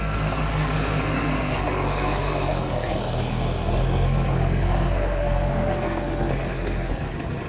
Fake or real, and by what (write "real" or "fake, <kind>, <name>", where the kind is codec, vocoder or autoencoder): fake, codec, SNAC